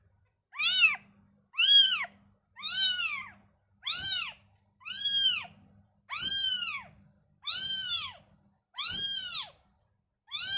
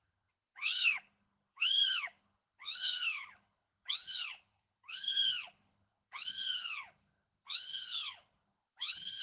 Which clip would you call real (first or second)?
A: first